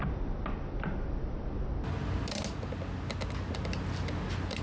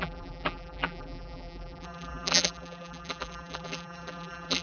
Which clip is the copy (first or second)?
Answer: second